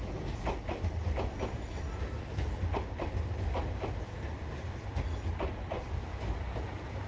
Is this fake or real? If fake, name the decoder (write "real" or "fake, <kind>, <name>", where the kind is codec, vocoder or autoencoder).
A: real